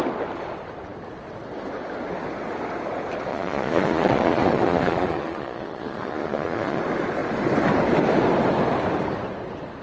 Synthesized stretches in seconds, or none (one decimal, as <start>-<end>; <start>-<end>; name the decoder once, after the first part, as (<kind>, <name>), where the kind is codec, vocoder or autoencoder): 3.3-6.8 (vocoder, Vocos)